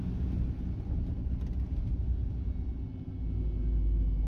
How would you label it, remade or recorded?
recorded